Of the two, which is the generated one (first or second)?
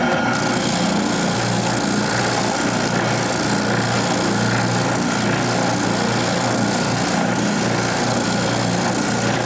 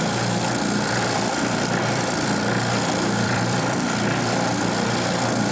second